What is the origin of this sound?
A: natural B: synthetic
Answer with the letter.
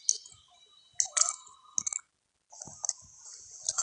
A